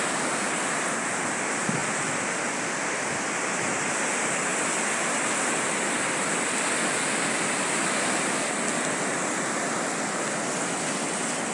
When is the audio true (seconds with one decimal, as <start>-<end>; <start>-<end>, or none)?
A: 0.0-11.5